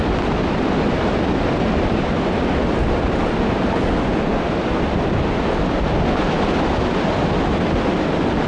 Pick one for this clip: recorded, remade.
recorded